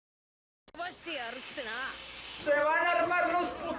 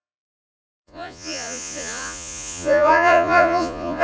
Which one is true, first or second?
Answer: first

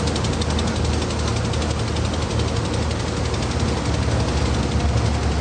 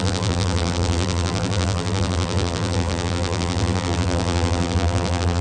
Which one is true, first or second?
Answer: first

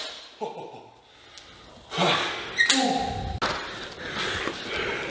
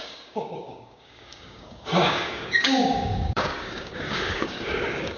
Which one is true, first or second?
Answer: first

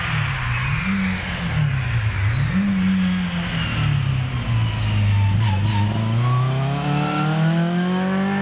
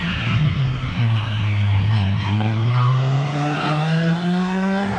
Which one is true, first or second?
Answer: first